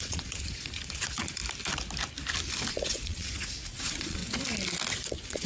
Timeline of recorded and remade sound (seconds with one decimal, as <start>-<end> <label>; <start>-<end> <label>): 0.0-1.4 remade; 1.4-2.7 recorded; 2.7-4.2 remade; 4.2-4.9 recorded; 4.9-5.5 remade

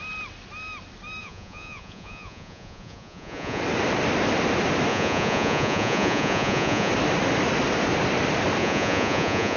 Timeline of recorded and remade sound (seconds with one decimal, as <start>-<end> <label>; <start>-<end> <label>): 0.0-1.2 recorded; 1.2-3.6 remade; 3.6-4.9 recorded; 4.9-6.9 remade; 6.9-8.6 recorded; 8.6-9.6 remade

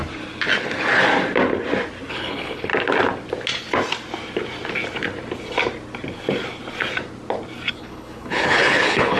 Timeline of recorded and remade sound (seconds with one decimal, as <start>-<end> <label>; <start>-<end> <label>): 0.0-2.1 recorded; 2.1-2.7 remade; 2.7-7.7 recorded; 7.7-9.2 remade